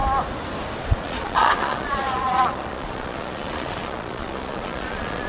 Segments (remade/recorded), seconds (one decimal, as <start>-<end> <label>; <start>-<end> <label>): 0.0-0.8 recorded; 0.8-5.3 remade